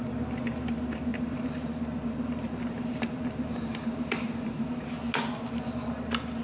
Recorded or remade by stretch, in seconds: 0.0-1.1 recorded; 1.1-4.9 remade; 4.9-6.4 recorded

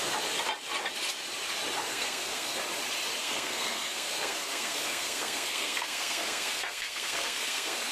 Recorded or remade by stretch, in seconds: 0.0-1.9 recorded; 1.9-2.6 remade; 2.6-3.2 recorded; 3.2-7.9 remade

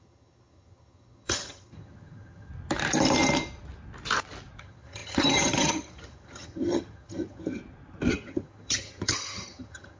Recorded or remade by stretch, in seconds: 0.0-2.5 remade; 2.5-4.6 recorded; 4.6-7.6 remade; 7.6-8.1 recorded; 8.1-10.0 remade

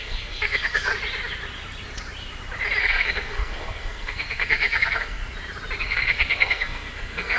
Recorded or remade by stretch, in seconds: 0.0-0.9 remade; 0.9-2.8 recorded; 2.8-5.2 remade; 5.2-5.8 recorded; 5.8-7.4 remade

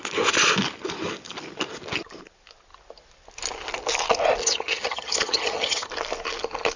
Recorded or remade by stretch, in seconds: 0.0-4.4 recorded; 4.4-5.9 remade; 5.9-6.8 recorded

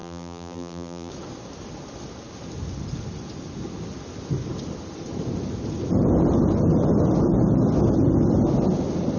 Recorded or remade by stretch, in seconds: 0.0-1.1 remade; 1.1-9.2 recorded

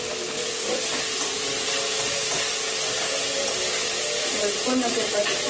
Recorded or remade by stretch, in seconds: 0.0-4.2 recorded; 4.2-5.5 remade